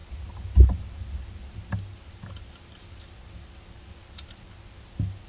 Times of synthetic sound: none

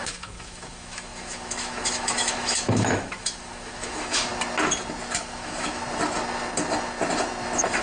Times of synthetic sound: 0.0-4.3 (autoencoder, DAC-VAE); 5.2-5.8